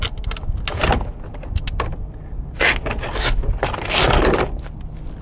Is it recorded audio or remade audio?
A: recorded